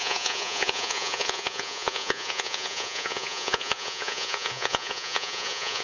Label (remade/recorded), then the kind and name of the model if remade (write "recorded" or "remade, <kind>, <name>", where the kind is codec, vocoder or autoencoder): remade, vocoder, Vocos